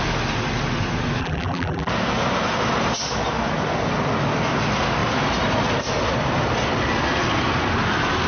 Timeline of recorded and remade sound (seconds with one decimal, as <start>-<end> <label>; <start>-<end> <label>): 0.0-1.2 recorded; 1.2-1.9 remade; 1.9-8.3 recorded